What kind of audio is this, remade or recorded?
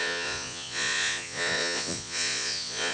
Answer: remade